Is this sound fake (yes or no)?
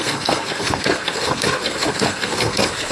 yes